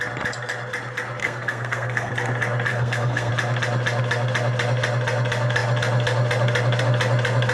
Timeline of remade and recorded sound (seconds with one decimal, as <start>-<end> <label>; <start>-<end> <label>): 0.0-1.2 recorded; 1.2-2.1 remade; 2.1-2.7 recorded; 2.7-3.3 remade; 3.3-7.5 recorded